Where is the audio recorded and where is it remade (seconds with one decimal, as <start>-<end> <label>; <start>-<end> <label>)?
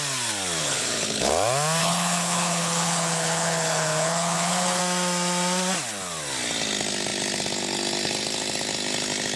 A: 0.0-0.6 recorded; 0.6-1.3 remade; 1.3-1.8 recorded; 1.8-4.8 remade; 4.8-9.4 recorded